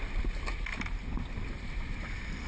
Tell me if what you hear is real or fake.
real